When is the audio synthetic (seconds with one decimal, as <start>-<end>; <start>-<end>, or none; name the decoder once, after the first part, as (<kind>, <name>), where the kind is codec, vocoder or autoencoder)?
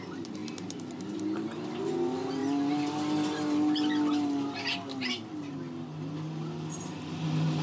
none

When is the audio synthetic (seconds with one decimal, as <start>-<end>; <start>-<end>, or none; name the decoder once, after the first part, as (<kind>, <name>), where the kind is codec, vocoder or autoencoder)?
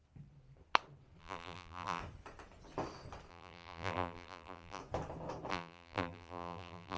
1.2-2.0 (vocoder, BigVGAN v2); 3.3-4.8; 5.5-7.0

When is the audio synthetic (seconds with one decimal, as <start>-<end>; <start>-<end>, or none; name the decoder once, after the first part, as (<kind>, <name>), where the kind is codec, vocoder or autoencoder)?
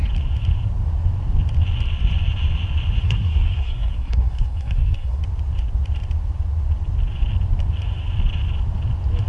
3.0-5.2 (codec, SNAC)